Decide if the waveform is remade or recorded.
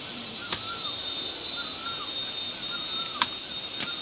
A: recorded